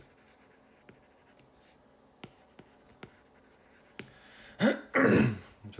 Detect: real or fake real